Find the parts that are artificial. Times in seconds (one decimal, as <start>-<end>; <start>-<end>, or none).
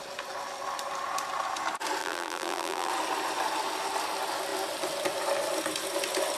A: 2.0-2.9